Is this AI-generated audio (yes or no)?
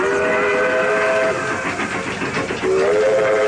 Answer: no